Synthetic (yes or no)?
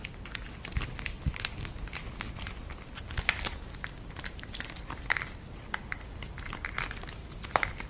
no